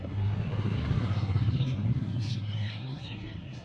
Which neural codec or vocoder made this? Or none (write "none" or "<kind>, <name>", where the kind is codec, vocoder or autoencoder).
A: codec, SNAC